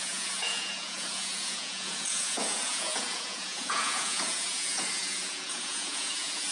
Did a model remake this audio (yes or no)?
yes